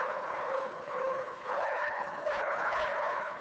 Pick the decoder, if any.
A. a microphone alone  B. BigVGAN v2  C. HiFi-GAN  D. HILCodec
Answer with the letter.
D